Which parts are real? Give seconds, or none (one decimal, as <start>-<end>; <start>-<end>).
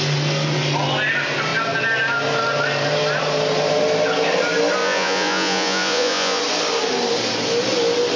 0.0-4.8; 6.4-8.2